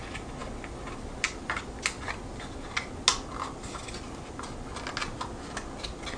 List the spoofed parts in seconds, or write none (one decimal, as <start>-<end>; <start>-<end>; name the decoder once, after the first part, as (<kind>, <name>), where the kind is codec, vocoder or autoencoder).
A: none